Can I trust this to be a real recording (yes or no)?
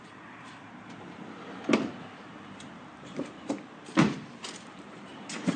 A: no